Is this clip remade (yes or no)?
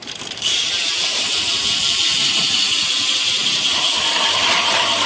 yes